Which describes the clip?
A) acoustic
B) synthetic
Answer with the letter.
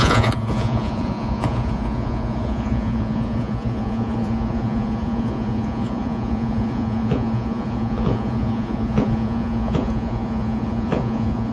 B